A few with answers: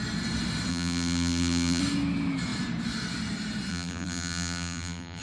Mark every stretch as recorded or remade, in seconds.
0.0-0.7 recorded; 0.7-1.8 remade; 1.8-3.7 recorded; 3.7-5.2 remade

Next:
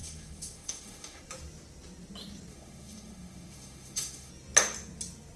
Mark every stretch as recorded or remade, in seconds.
0.0-1.2 remade; 1.2-2.5 recorded; 2.5-4.3 remade; 4.3-5.4 recorded

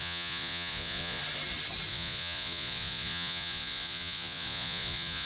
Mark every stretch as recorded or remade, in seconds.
0.0-1.2 remade; 1.2-1.9 recorded; 1.9-5.3 remade

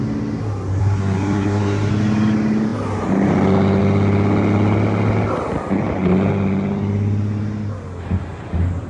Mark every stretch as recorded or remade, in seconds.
0.0-0.8 recorded; 0.8-1.9 remade; 1.9-8.9 recorded